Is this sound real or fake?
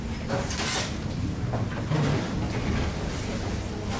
real